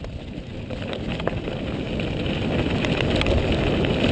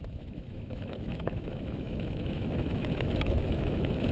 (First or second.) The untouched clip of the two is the first